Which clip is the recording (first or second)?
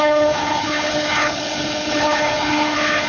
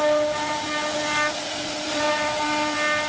second